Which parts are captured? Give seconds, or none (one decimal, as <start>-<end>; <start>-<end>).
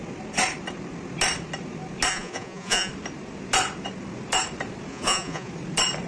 0.0-2.1; 2.9-4.9; 5.5-6.1